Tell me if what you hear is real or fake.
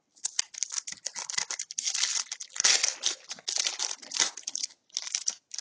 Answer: real